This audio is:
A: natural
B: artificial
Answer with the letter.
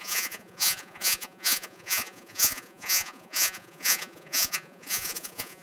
B